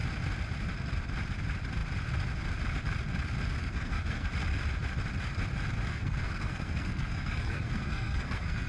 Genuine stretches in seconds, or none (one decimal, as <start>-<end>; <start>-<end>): 0.0-3.6; 4.3-5.9